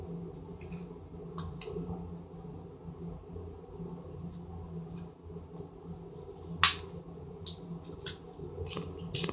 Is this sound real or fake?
real